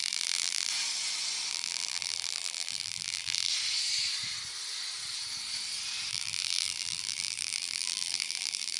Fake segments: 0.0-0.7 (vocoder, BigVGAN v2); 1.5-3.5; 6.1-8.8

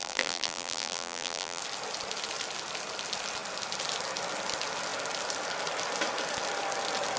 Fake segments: 0.0-1.6 (vocoder, BigVGAN v2)

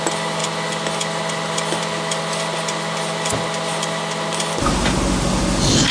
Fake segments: none

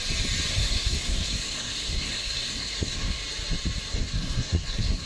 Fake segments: 0.5-3.2 (codec, SNAC); 3.9-5.1

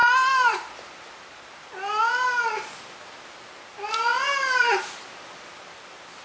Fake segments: 0.0-1.7 (vocoder, BigVGAN v2); 4.1-4.8

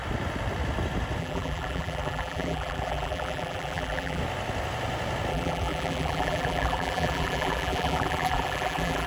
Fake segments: 1.2-4.2 (vocoder, BigVGAN v2); 5.3-9.1

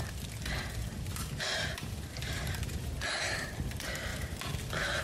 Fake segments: 1.1-2.9 (vocoder, BigVGAN v2)